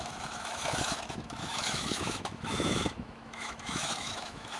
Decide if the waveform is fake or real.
fake